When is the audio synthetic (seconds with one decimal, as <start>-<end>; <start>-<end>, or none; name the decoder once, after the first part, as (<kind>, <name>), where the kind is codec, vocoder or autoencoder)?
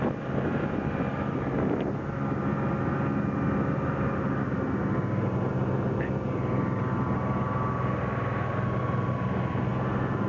none